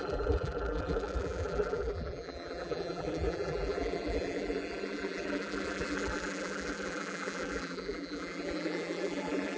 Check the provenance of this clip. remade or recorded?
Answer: remade